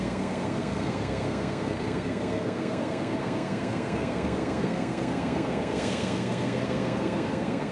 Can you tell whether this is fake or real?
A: fake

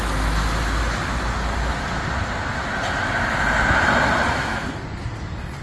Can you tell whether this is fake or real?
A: real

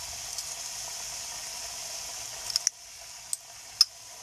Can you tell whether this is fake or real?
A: real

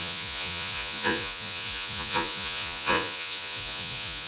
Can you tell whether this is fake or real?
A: fake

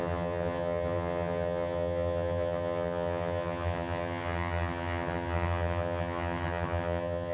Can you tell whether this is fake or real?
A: fake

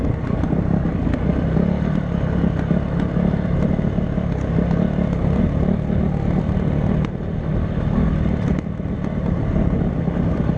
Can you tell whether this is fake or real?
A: real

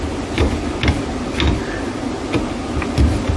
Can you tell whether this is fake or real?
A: real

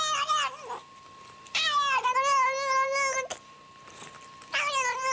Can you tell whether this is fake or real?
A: real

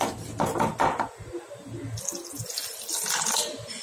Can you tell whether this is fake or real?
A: real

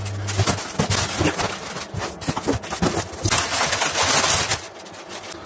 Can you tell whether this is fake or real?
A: real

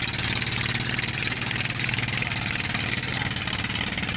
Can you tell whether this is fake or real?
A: real